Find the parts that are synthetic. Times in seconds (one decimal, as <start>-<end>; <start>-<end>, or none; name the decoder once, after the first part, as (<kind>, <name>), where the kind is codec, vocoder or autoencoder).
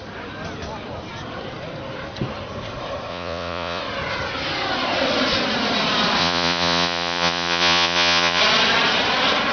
3.1-3.8 (vocoder, Vocos); 6.2-8.4